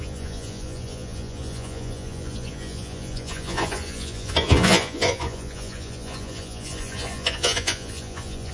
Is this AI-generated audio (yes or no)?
yes